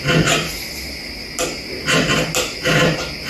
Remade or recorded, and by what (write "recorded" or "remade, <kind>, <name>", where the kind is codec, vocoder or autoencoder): recorded